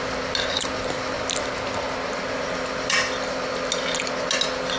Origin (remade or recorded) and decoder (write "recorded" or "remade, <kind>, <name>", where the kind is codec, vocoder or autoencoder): recorded